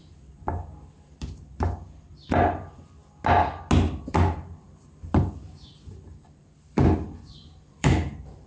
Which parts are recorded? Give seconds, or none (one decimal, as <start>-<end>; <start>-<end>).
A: 3.0-4.0